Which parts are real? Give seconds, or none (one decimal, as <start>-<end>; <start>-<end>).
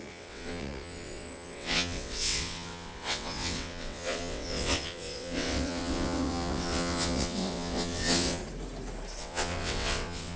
8.4-9.2